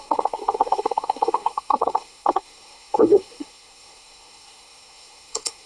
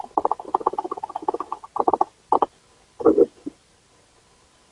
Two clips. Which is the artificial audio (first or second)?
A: first